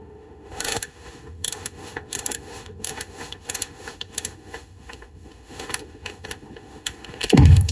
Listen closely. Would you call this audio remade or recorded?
remade